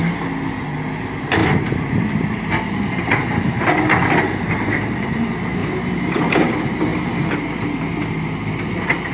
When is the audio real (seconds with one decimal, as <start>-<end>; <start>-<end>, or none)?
0.0-1.4; 2.5-5.6; 6.3-9.1